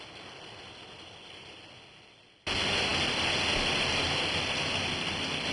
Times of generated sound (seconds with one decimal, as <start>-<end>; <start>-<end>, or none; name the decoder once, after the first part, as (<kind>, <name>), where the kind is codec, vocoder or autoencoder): none